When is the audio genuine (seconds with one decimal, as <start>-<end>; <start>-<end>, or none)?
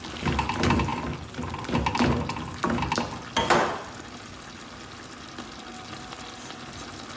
0.0-7.2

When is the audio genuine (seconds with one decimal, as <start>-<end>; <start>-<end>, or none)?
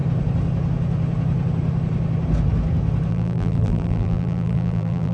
0.0-3.1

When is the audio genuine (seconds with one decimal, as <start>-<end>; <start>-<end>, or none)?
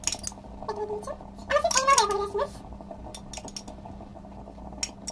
0.0-5.1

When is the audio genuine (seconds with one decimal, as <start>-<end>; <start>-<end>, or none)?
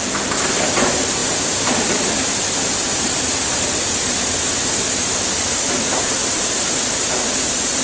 0.0-1.2; 1.9-2.8; 5.3-6.2; 6.9-7.8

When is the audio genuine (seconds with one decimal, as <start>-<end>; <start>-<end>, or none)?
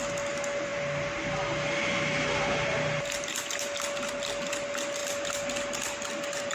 0.0-6.5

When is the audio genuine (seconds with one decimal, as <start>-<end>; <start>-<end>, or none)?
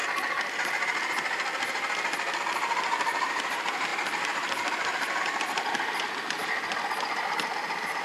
0.0-2.4; 6.4-7.0